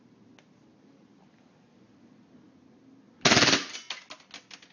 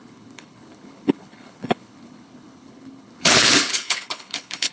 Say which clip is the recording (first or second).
first